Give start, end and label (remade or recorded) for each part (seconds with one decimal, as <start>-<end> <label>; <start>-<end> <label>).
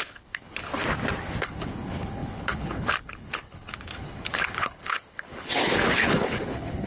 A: 0.0-0.8 remade; 0.8-1.4 recorded; 1.4-6.9 remade